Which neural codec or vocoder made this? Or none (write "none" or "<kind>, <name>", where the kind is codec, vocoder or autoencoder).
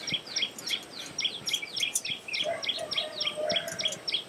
none